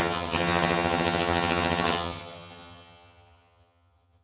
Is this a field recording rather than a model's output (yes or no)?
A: no